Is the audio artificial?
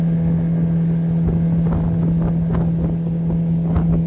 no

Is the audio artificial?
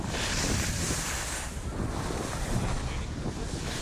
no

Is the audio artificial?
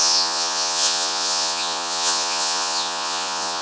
yes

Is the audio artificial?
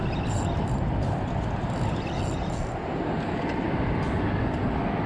no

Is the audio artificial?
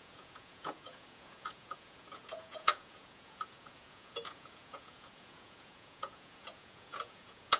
yes